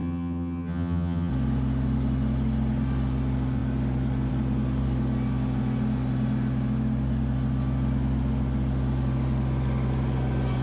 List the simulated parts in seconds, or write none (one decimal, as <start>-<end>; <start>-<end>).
0.0-1.3